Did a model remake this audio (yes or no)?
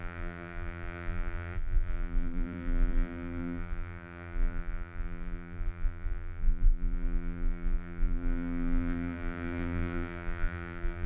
yes